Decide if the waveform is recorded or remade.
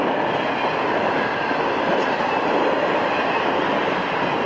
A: recorded